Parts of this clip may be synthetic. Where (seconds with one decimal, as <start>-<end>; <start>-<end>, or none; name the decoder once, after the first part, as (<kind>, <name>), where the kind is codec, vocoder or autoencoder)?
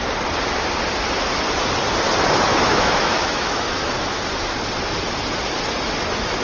2.5-4.3 (autoencoder, DAC-VAE)